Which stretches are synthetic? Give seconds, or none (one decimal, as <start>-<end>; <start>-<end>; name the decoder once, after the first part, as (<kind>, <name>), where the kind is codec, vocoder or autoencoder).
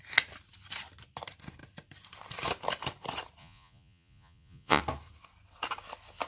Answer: 3.4-4.8 (vocoder, Vocos)